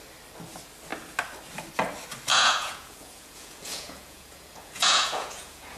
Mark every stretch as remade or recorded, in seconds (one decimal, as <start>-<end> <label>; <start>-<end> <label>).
0.0-2.3 recorded; 2.3-5.8 remade